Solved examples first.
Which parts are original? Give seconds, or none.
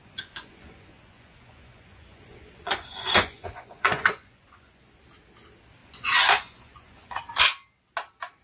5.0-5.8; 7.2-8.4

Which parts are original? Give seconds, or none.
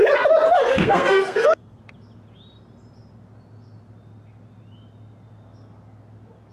0.0-0.6; 1.8-6.5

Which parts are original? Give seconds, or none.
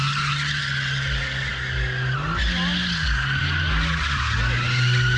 0.0-5.2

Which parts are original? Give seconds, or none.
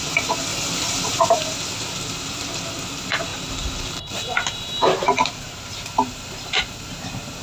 0.0-3.3; 6.1-7.4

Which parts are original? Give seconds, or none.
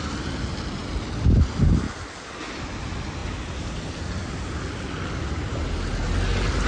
0.0-6.7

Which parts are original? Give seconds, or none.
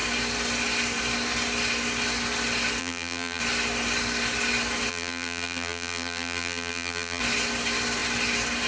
0.0-2.8; 3.4-4.9; 7.2-8.7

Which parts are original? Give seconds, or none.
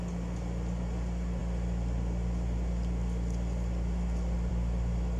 0.0-5.2